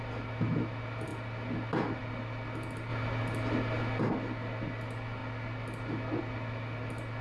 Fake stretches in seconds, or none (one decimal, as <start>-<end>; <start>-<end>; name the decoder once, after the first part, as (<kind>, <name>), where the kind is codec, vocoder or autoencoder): none